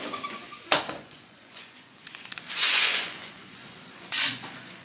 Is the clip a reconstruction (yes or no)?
yes